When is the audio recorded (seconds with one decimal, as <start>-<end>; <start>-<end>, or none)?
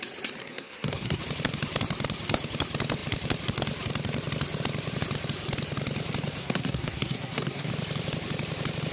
0.0-0.4; 1.2-6.4; 7.7-8.9